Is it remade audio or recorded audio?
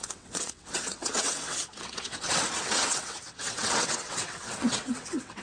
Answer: remade